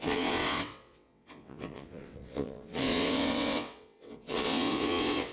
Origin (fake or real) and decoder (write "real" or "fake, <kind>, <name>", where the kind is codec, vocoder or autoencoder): fake, vocoder, WaveNeXt